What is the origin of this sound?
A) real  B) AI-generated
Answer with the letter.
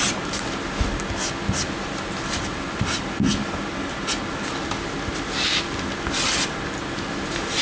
A